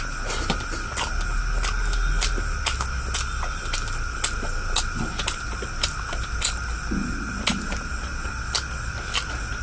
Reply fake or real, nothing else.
real